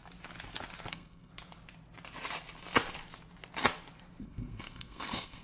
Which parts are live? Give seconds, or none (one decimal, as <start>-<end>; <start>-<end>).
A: 0.0-0.9; 1.3-4.2